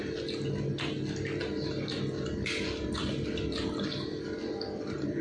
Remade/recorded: recorded